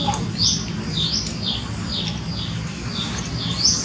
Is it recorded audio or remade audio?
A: recorded